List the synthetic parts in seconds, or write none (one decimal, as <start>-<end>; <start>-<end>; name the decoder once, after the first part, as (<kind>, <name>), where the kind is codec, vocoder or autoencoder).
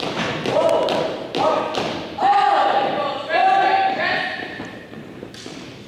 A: 0.5-1.6 (vocoder, BigVGAN v2); 3.4-4.0